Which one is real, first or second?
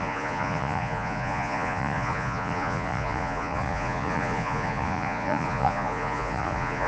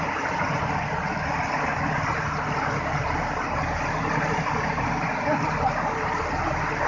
second